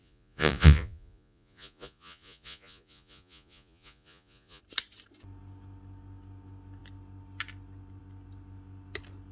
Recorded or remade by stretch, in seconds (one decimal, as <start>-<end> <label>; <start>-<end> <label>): 0.0-4.6 remade; 4.6-9.3 recorded